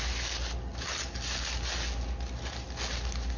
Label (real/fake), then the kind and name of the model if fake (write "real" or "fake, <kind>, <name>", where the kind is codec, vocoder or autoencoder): real